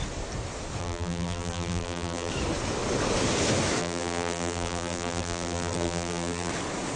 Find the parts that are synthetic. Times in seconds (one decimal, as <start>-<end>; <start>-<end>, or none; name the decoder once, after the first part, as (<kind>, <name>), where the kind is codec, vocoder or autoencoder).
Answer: 0.8-2.3 (vocoder, BigVGAN v2); 3.8-6.5

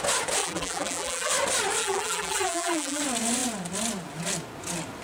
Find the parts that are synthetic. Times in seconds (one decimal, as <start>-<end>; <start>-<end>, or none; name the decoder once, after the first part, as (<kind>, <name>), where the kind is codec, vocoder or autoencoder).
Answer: 0.4-1.3 (vocoder, BigVGAN v2); 1.8-3.0

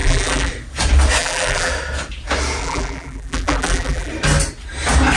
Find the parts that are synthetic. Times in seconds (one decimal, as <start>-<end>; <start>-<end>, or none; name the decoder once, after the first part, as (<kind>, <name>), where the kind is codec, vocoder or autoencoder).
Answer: 0.0-0.5 (vocoder, BigVGAN v2); 1.2-1.7; 2.6-4.1

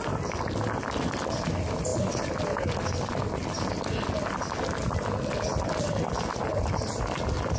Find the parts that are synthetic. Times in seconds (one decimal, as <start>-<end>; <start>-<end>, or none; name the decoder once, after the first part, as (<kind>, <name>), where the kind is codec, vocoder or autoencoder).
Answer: 1.9-3.7 (vocoder, BigVGAN v2); 5.5-6.5

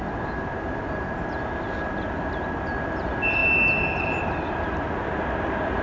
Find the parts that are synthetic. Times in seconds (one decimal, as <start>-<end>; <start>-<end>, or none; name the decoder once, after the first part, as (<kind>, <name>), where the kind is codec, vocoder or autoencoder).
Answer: none

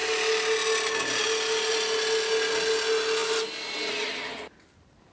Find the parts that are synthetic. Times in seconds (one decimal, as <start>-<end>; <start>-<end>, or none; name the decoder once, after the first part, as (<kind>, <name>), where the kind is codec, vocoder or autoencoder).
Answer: none

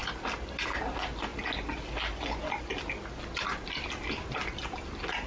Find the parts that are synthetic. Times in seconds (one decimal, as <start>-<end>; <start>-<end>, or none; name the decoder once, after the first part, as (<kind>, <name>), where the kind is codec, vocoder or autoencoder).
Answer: none

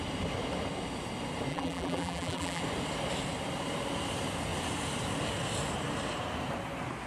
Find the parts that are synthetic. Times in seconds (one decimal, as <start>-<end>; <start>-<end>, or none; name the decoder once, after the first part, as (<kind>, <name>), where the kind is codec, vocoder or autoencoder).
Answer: 1.5-2.6 (vocoder, BigVGAN v2)